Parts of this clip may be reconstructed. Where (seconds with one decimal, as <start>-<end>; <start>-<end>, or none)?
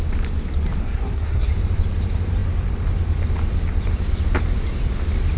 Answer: 0.8-1.5